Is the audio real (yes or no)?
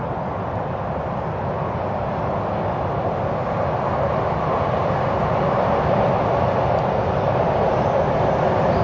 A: yes